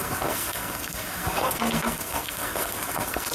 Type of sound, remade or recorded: remade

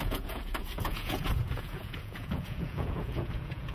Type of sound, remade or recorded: remade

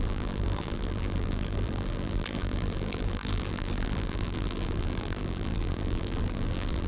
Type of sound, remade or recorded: remade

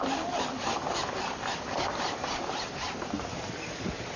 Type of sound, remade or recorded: recorded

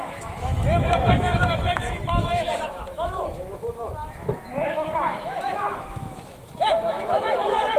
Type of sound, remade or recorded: remade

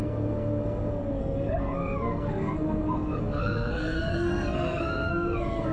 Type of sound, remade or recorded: remade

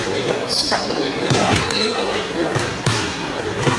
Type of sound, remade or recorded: remade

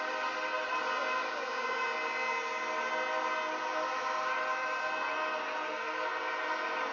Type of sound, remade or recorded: recorded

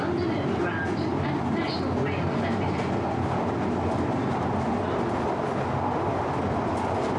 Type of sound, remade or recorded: recorded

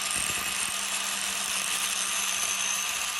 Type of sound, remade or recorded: recorded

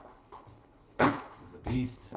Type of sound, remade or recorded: remade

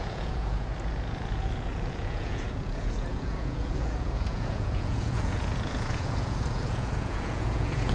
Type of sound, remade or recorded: remade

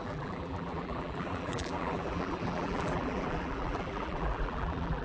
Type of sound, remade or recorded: remade